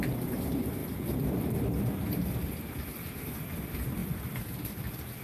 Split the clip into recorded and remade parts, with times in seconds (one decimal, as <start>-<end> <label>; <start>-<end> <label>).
0.0-0.8 recorded; 0.8-1.8 remade; 1.8-4.0 recorded; 4.0-4.8 remade; 4.8-5.2 recorded

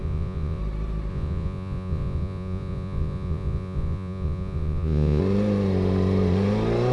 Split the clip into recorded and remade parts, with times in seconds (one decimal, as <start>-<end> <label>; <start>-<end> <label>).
0.0-0.6 remade; 0.6-1.1 recorded; 1.1-5.2 remade; 5.2-6.9 recorded

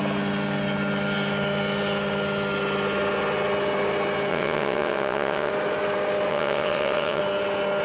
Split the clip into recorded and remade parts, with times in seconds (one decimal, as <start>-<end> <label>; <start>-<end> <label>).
0.0-4.3 recorded; 4.3-5.5 remade; 5.5-6.3 recorded; 6.3-7.2 remade; 7.2-7.8 recorded

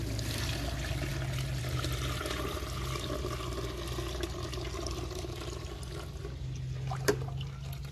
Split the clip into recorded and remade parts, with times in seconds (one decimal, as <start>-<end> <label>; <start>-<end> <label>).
0.0-7.9 recorded